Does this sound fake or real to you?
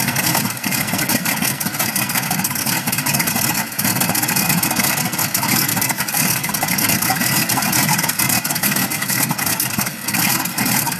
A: fake